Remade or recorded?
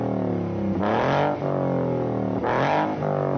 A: recorded